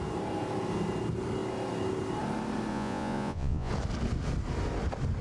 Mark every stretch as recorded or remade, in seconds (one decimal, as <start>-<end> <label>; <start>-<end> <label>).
0.0-2.7 recorded; 2.7-3.7 remade; 3.7-5.2 recorded

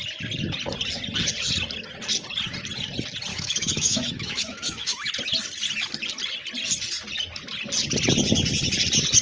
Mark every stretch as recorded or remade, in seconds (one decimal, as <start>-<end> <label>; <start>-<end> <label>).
0.0-3.3 recorded; 3.3-5.1 remade; 5.1-9.2 recorded

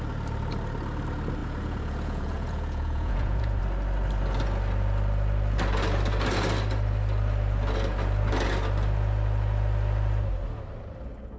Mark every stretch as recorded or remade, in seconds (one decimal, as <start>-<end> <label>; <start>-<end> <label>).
0.0-1.4 recorded; 1.4-3.6 remade; 3.6-11.4 recorded

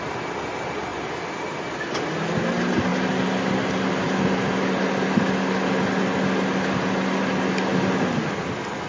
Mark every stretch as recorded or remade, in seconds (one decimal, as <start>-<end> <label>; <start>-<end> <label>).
0.0-8.9 recorded